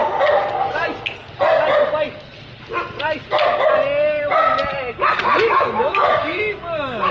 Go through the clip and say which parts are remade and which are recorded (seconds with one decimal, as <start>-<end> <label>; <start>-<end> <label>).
0.0-5.4 recorded; 5.4-6.6 remade; 6.6-7.1 recorded